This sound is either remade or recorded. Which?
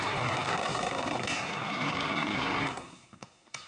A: remade